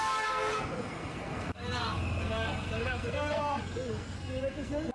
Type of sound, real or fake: fake